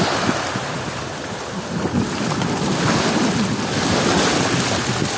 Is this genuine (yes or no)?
yes